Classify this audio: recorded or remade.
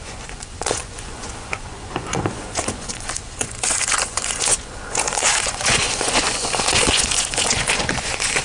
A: remade